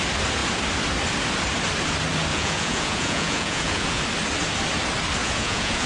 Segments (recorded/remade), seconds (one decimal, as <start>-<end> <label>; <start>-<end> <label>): 0.0-2.3 recorded; 2.3-4.0 remade; 4.0-5.2 recorded; 5.2-5.9 remade